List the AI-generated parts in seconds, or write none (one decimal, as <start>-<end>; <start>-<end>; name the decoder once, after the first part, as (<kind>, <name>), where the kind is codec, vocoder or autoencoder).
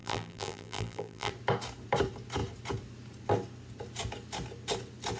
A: 0.0-1.3 (vocoder, BigVGAN v2)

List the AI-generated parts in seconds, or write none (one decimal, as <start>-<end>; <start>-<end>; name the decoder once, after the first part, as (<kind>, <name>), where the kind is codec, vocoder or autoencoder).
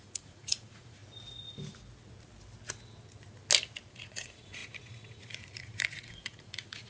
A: 0.0-1.0 (vocoder, Vocos); 3.9-6.9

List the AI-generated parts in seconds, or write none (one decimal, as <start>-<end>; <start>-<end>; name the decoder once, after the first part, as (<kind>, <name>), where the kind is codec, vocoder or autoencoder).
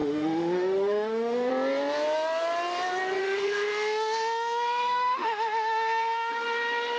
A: 0.0-1.5 (autoencoder, DAC-VAE); 3.2-6.3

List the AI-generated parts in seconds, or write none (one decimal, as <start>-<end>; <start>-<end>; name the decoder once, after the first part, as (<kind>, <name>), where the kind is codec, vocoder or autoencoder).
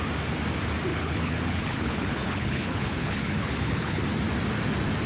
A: 0.9-4.0 (codec, HILCodec)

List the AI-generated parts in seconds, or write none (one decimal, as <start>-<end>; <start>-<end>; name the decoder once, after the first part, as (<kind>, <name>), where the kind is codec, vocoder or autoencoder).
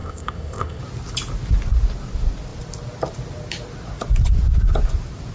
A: 0.0-0.8 (codec, ZipCodec)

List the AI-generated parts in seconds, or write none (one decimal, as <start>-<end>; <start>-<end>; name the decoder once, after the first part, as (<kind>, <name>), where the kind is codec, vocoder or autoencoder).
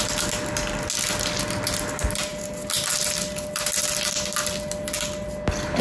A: none